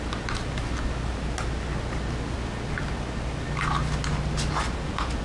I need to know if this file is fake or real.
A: real